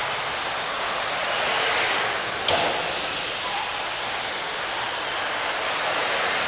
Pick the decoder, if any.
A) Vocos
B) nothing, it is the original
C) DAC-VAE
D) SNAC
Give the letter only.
B